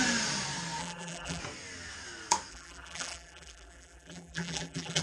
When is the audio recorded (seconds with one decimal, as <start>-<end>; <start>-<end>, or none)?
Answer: 0.0-0.8; 1.4-2.5